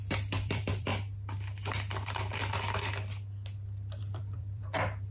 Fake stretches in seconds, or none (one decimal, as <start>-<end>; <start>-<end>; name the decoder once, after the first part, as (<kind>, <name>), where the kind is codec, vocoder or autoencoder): 0.0-0.9 (vocoder, BigVGAN v2); 4.0-5.1